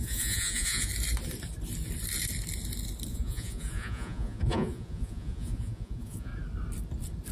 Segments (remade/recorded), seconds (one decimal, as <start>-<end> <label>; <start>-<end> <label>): 0.0-0.9 remade; 0.9-3.1 recorded; 3.1-6.3 remade; 6.3-7.3 recorded